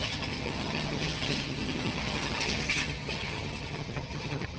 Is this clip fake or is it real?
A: fake